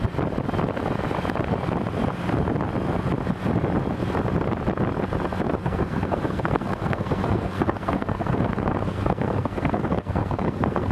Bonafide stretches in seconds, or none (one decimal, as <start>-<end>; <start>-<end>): 0.0-5.6